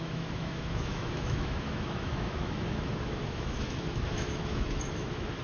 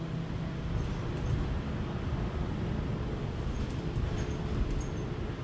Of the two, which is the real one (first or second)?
second